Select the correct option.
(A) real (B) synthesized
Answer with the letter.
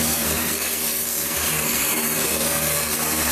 B